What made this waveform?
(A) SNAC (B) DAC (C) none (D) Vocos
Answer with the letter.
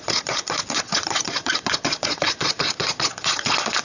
D